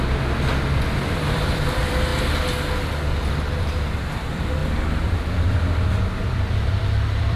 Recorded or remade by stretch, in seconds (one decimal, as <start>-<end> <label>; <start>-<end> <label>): 0.0-2.1 remade; 2.1-3.6 recorded; 3.6-7.4 remade